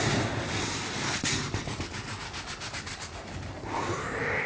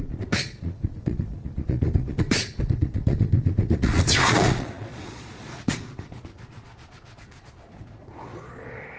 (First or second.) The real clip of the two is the first